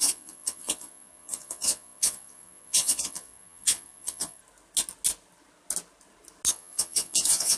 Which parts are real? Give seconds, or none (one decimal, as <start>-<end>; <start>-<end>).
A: 4.4-6.5